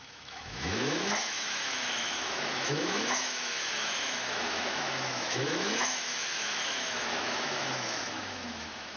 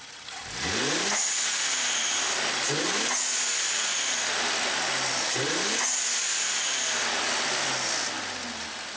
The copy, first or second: first